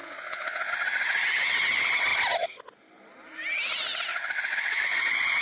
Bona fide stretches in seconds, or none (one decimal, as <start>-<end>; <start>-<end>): 0.7-4.1